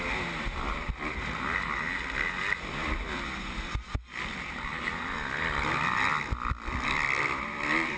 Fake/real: real